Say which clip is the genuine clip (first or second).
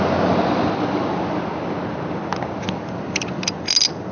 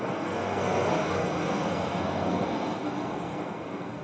first